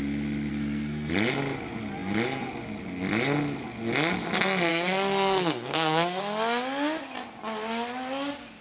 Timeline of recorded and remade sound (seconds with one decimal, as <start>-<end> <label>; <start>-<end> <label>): 0.0-0.5 recorded; 0.5-1.1 remade; 1.1-4.7 recorded; 4.7-6.2 remade; 6.2-8.6 recorded